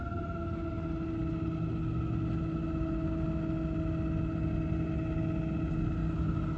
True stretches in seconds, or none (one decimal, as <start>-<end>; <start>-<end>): 0.0-6.6